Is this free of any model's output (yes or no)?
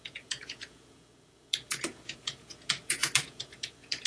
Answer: no